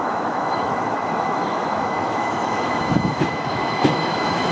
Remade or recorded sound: remade